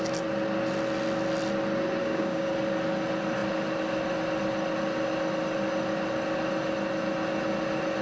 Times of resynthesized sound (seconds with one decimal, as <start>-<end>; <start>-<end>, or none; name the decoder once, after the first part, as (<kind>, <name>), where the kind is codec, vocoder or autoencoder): 2.0-2.5 (codec, DAC)